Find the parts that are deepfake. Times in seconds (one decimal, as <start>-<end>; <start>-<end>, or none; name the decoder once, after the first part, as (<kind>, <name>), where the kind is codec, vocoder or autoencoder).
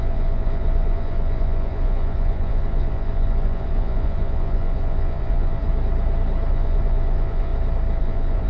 0.0-5.7 (vocoder, Vocos); 6.5-7.5; 8.0-8.5